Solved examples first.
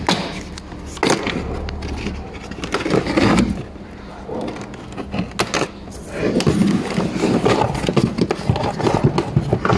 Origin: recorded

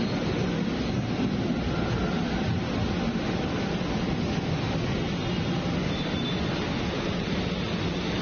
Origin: recorded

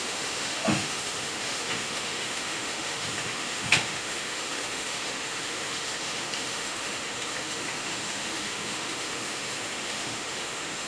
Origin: remade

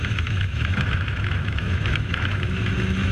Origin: remade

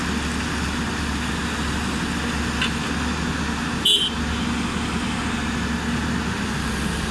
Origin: recorded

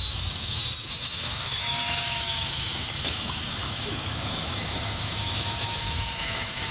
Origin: remade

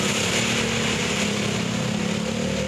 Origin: recorded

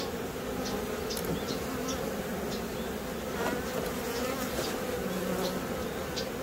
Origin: recorded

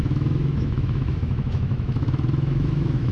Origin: remade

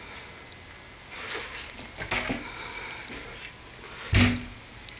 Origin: recorded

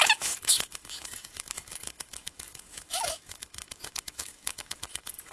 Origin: remade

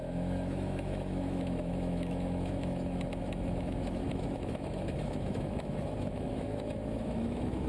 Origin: remade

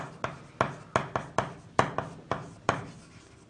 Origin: recorded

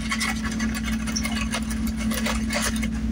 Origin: recorded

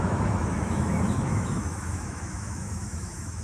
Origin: remade